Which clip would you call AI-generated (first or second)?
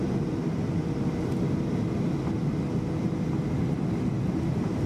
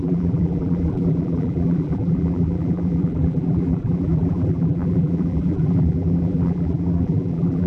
second